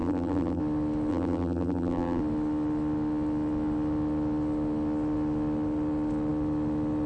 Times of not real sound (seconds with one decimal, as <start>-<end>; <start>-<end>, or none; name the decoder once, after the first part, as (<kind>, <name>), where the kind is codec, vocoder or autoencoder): 0.0-0.6 (vocoder, BigVGAN v2); 1.1-2.2